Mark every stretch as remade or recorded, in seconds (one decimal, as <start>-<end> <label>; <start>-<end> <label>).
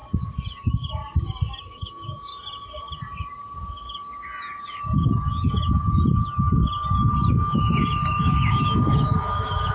0.0-0.6 recorded; 0.6-1.0 remade; 1.0-1.6 recorded; 1.6-2.3 remade; 2.3-7.3 recorded; 7.3-9.7 remade